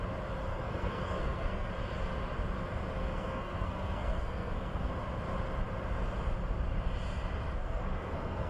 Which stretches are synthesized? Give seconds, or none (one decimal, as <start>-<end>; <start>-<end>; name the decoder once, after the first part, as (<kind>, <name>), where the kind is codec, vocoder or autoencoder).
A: 0.5-1.7 (codec, SNAC); 3.0-4.9; 7.5-8.5